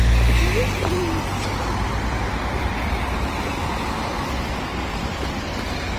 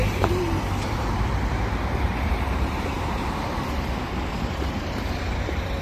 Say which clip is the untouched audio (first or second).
first